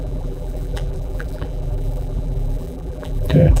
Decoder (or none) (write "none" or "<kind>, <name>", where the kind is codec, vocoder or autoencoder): vocoder, BigVGAN v2